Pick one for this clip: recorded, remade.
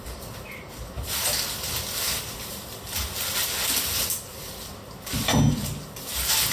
recorded